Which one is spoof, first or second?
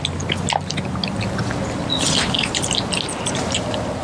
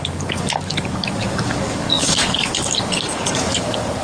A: second